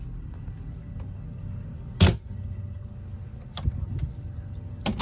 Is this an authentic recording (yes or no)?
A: yes